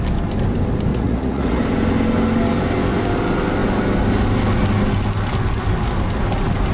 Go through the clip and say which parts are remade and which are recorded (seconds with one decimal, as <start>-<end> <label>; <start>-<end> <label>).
0.0-0.9 recorded; 0.9-1.6 remade; 1.6-6.7 recorded